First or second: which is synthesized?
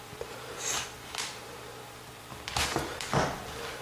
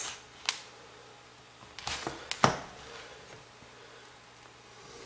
first